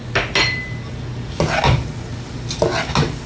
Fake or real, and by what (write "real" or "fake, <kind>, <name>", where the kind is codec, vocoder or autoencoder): real